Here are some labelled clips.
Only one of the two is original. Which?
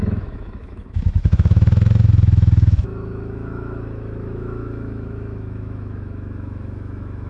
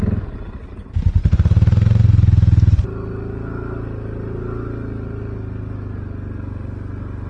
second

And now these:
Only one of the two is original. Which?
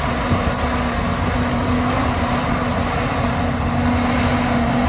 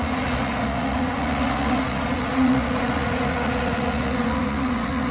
first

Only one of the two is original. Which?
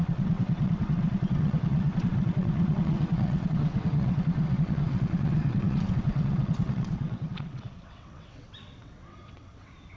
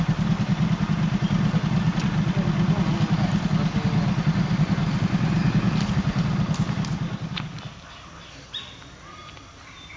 second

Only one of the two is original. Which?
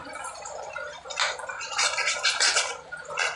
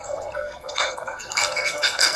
first